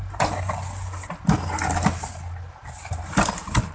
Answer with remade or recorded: recorded